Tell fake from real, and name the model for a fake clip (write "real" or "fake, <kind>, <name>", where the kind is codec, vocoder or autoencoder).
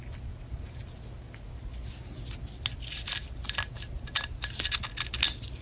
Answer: real